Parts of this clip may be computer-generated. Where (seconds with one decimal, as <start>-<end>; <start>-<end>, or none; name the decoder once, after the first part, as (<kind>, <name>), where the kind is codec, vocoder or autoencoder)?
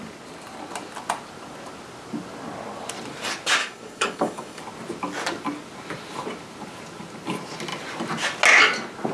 3.6-4.6 (codec, DAC)